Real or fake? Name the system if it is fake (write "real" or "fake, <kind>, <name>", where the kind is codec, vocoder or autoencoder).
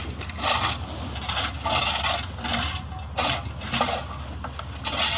real